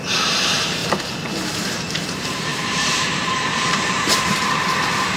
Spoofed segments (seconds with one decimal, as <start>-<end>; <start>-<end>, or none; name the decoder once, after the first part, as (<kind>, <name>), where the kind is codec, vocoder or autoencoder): 0.0-5.2 (vocoder, BigVGAN v2)